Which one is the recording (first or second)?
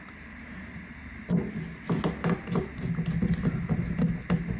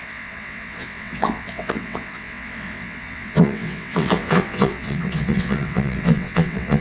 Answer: first